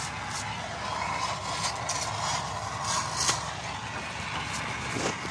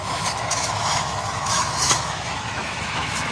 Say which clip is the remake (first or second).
second